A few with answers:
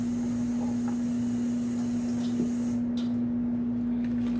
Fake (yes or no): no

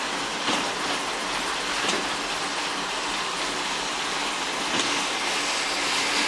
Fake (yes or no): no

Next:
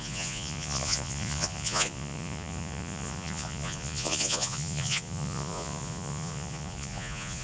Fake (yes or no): yes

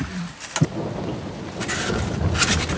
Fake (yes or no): no